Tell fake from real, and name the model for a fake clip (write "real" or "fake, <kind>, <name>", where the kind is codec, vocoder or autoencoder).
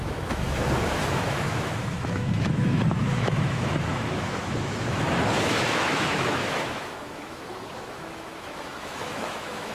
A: fake, autoencoder, DAC-VAE